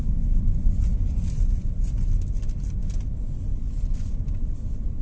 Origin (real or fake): real